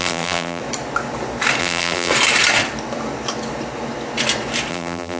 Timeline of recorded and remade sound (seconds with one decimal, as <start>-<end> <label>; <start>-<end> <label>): 0.0-0.6 remade; 0.6-1.6 recorded; 1.6-2.1 remade; 2.1-4.7 recorded; 4.7-5.2 remade